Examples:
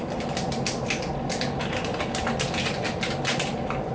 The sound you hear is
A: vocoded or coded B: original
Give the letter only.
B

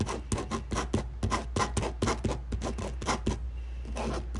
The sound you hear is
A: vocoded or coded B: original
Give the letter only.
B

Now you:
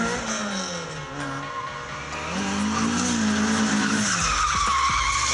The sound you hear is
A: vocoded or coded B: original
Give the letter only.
B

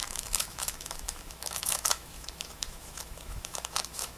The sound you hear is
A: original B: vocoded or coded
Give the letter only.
B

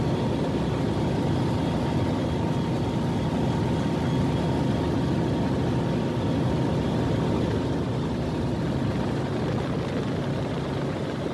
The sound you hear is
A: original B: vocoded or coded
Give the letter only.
A